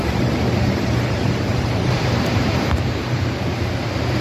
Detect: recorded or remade remade